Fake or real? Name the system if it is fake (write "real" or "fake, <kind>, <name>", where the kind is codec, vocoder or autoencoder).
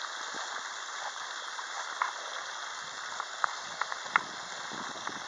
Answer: real